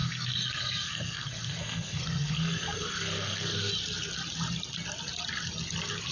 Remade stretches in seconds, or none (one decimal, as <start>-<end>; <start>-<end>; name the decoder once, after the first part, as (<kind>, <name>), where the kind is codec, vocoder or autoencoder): 0.0-3.7 (codec, SNAC)